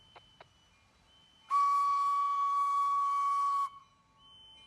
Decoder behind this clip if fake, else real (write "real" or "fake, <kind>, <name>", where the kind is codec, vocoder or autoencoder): real